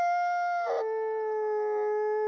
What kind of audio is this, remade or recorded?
recorded